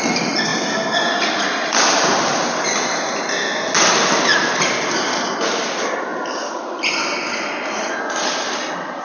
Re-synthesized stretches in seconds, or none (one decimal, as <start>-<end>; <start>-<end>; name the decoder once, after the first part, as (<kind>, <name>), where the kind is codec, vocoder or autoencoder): none